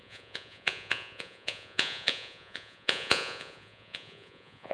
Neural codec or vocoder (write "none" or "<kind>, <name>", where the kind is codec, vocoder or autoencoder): vocoder, Vocos